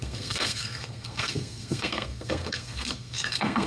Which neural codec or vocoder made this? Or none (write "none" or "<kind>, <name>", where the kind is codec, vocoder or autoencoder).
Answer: codec, SNAC